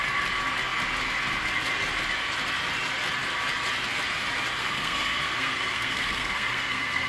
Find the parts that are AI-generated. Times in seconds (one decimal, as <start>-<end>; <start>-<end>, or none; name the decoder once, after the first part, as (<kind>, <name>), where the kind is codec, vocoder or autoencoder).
4.6-7.1 (codec, SNAC)